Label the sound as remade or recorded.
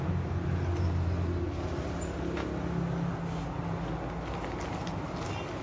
recorded